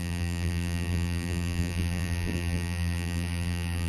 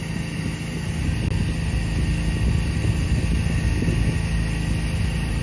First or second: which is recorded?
second